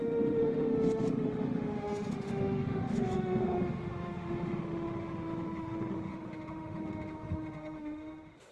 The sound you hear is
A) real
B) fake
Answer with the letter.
B